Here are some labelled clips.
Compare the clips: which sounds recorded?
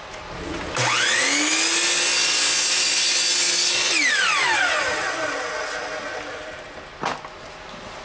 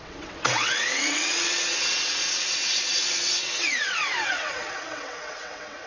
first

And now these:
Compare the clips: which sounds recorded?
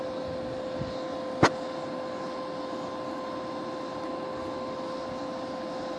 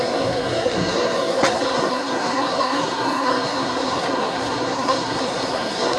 first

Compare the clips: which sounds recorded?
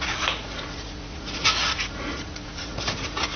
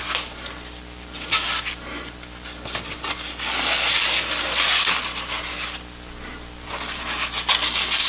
second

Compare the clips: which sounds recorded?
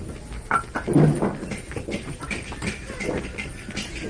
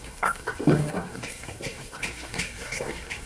first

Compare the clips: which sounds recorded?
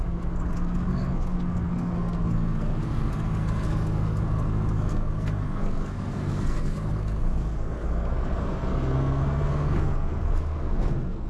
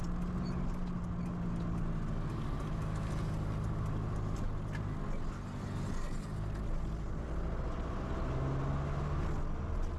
second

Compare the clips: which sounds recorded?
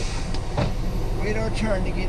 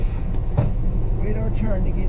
first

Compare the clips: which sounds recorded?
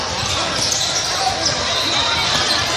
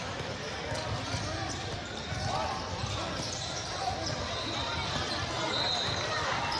first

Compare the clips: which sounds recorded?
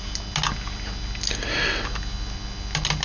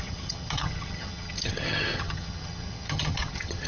first